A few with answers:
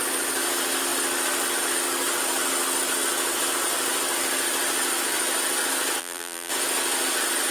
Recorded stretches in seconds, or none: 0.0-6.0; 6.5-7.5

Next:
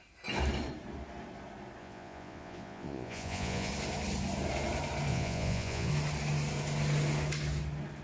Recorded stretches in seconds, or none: 0.0-1.8; 3.7-5.1; 5.9-8.0

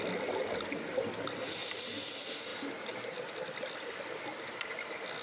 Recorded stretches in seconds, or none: 0.0-1.6; 2.1-5.2

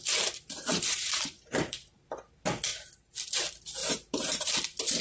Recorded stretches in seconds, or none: 0.0-0.7; 2.1-3.8; 4.5-5.0

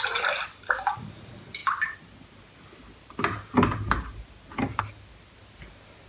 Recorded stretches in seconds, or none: 0.0-6.1